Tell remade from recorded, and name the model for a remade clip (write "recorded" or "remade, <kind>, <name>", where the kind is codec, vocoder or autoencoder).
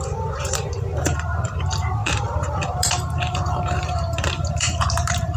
remade, vocoder, BigVGAN v2